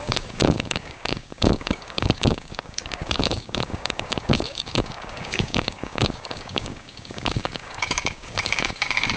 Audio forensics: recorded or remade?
remade